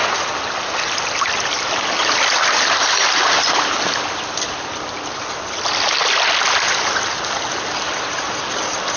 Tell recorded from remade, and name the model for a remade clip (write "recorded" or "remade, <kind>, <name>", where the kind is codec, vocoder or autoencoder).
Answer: recorded